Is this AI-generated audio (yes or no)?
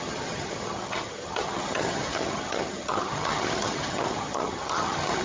yes